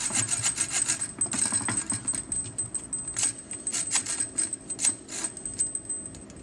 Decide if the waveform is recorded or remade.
recorded